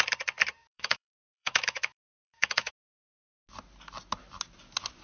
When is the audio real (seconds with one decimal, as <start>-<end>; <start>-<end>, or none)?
0.0-0.6; 2.7-5.0